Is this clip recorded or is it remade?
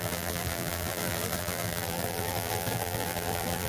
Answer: remade